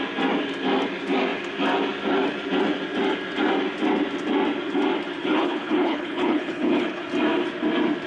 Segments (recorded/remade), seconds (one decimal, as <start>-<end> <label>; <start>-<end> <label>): 0.0-5.2 recorded; 5.2-7.0 remade; 7.0-8.1 recorded